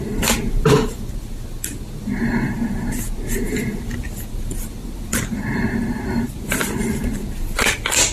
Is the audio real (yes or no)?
yes